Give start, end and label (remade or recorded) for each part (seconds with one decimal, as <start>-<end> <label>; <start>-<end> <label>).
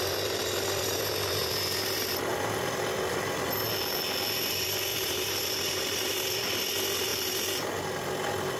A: 0.0-4.9 recorded; 4.9-6.1 remade; 6.1-7.1 recorded; 7.1-7.8 remade; 7.8-8.6 recorded